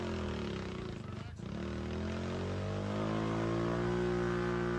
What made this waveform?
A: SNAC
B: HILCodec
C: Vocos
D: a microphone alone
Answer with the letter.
D